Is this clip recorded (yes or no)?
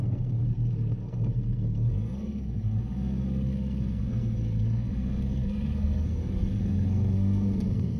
no